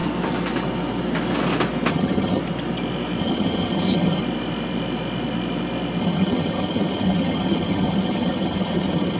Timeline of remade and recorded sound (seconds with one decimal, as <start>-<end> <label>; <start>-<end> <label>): 0.0-1.9 recorded; 1.9-2.4 remade; 2.4-3.2 recorded; 3.2-4.2 remade; 4.2-6.0 recorded; 6.0-9.2 remade